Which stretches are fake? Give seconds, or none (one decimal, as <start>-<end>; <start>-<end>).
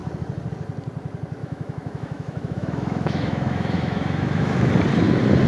1.4-4.7